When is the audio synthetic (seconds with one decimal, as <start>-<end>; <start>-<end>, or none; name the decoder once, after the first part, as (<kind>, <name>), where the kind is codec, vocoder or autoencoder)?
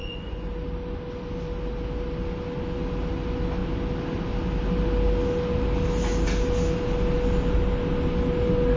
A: 0.0-0.5 (vocoder, Vocos)